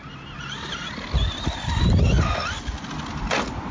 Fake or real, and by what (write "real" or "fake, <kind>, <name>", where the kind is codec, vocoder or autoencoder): real